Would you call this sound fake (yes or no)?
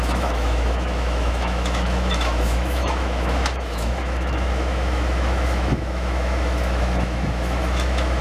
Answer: yes